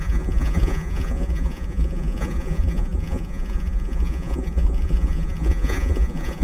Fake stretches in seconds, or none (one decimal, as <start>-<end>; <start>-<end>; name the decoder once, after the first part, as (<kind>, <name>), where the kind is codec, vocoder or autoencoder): 0.0-6.4 (vocoder, Vocos)